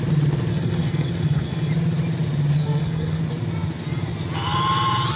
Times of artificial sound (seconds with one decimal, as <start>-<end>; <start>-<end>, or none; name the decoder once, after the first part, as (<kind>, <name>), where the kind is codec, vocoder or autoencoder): 0.5-1.7 (codec, SNAC); 2.6-3.2

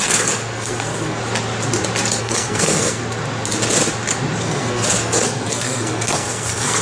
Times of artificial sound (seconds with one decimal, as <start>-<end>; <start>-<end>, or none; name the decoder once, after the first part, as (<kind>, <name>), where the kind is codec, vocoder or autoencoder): 0.0-1.2 (codec, SNAC); 2.2-3.0; 4.4-6.8

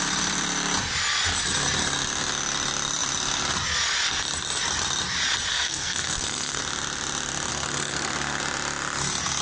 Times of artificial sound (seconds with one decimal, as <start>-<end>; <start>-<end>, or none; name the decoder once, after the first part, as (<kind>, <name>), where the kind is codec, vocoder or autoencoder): 5.5-6.6 (codec, SNAC); 7.5-8.4

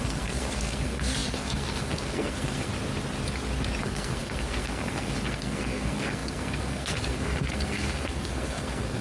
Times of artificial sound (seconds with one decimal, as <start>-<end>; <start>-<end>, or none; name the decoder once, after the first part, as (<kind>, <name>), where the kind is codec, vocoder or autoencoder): 0.0-2.7 (codec, SNAC); 3.8-9.0